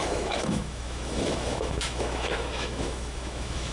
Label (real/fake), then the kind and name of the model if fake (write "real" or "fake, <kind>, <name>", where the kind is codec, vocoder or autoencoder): fake, autoencoder, DAC-VAE